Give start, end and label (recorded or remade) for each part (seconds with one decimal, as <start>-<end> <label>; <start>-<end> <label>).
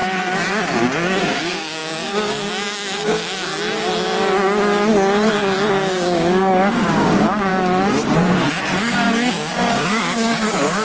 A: 0.0-1.2 recorded; 1.2-3.5 remade; 3.5-5.7 recorded; 5.7-7.5 remade; 7.5-8.8 recorded; 8.8-10.8 remade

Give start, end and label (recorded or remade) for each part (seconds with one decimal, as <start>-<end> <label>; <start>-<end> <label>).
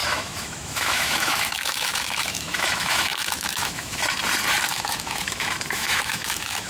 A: 0.0-4.0 remade; 4.0-4.7 recorded; 4.7-6.7 remade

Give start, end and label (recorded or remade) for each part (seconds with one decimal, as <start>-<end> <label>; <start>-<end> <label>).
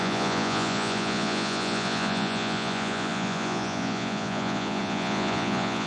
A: 0.0-5.9 remade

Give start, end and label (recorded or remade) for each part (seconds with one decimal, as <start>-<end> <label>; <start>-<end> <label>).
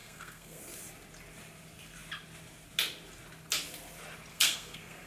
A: 0.0-0.6 remade; 0.6-4.3 recorded; 4.3-5.1 remade